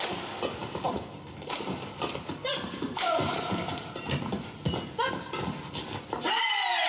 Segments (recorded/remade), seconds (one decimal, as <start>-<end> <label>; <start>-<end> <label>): 0.0-0.6 recorded; 0.6-1.3 remade; 1.3-6.9 recorded